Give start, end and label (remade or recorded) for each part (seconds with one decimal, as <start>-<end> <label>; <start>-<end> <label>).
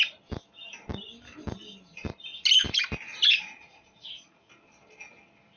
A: 0.0-3.3 recorded; 3.3-4.5 remade; 4.5-5.6 recorded